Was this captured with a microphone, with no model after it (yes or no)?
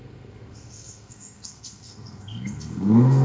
no